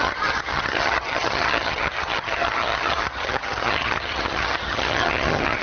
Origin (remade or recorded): remade